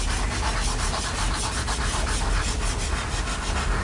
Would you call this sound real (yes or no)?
yes